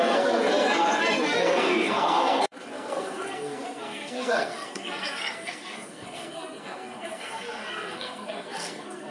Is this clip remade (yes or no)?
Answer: yes